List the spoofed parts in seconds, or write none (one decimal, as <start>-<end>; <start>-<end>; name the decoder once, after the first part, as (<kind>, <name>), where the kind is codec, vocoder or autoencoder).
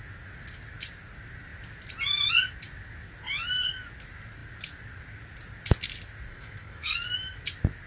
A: 6.3-7.0 (codec, SNAC)